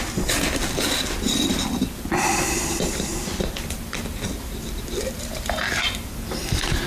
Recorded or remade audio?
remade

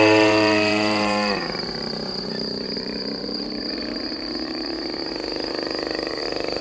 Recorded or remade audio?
remade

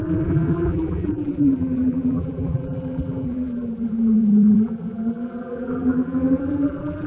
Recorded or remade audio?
remade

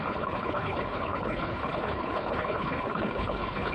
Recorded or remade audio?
remade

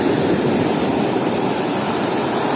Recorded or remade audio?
remade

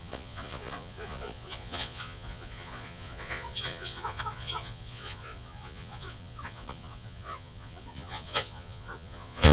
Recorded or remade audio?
remade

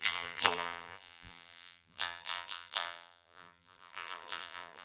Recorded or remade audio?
remade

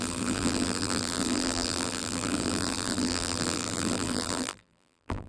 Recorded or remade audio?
remade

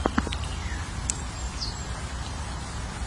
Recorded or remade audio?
recorded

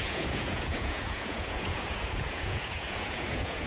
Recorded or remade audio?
remade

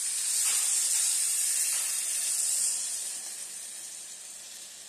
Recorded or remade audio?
recorded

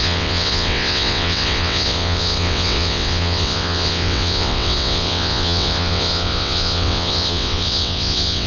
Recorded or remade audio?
remade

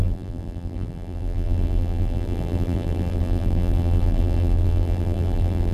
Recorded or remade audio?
remade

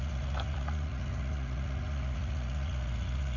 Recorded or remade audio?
remade